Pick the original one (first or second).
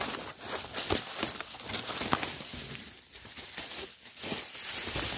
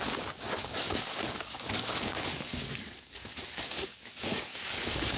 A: first